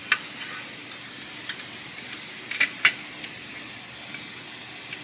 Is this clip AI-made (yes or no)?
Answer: no